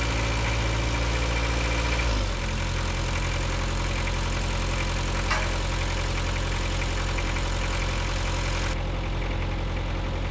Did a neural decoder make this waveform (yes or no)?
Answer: no